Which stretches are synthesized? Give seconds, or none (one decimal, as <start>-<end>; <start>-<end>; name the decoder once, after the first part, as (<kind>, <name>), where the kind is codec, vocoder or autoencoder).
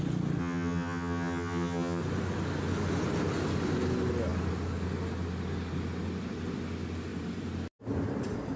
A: 0.4-2.0 (vocoder, HiFi-GAN)